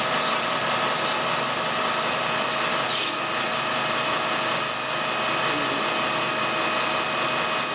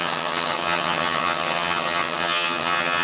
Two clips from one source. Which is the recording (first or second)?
first